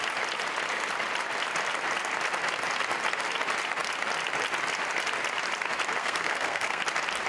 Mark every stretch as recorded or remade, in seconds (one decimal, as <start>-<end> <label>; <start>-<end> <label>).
0.0-6.0 recorded; 6.0-6.8 remade; 6.8-7.3 recorded